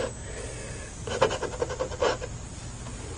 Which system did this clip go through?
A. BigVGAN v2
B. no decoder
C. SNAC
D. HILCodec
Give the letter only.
B